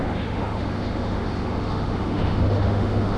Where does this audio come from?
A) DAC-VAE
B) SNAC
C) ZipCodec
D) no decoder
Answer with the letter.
A